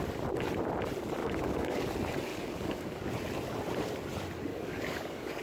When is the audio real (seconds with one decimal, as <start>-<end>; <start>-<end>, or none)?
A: 0.0-1.2; 1.8-2.3; 3.1-4.5